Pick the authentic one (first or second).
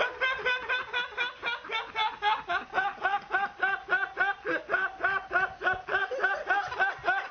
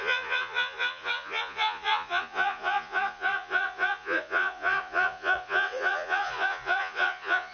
first